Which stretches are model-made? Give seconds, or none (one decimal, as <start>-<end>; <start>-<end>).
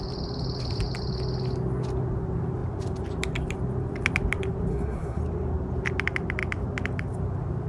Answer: 4.7-5.2